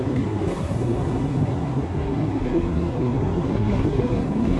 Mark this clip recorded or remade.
remade